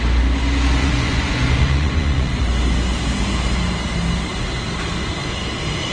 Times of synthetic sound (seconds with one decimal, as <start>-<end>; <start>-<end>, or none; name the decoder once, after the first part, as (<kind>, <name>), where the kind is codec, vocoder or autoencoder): 0.8-2.5 (vocoder, Vocos)